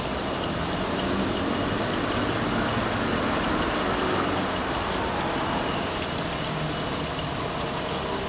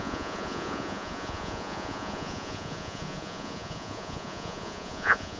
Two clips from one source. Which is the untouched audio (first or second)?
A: first